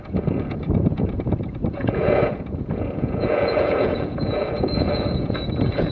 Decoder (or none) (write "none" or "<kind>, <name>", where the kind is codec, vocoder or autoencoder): vocoder, Vocos